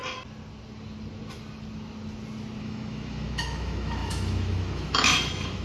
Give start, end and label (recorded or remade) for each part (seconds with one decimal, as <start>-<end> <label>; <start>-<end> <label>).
0.0-2.6 recorded; 2.6-5.6 remade